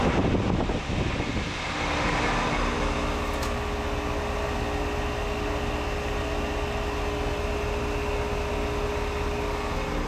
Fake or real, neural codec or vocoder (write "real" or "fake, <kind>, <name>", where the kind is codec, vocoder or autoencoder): real